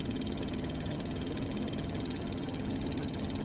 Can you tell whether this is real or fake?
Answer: fake